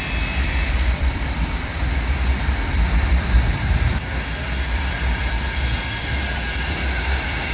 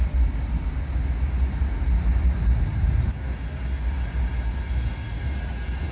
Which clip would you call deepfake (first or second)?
first